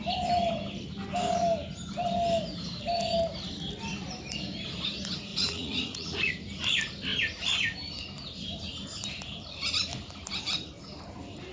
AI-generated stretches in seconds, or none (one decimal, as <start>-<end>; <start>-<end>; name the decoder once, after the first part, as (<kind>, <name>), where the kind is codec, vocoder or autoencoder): 5.3-6.3 (vocoder, Vocos)